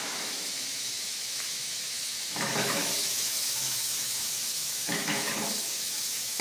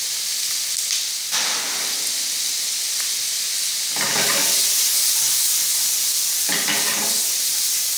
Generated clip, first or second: first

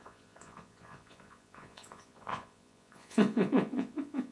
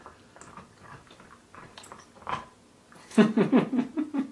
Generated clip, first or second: first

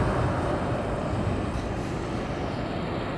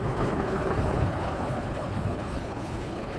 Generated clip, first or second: second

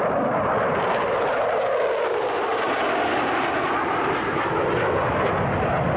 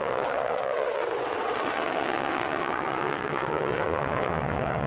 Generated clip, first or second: second